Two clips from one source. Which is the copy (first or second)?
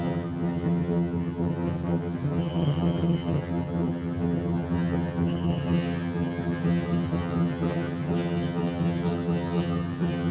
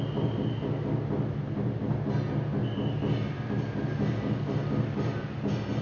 first